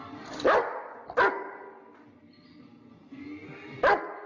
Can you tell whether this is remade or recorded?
recorded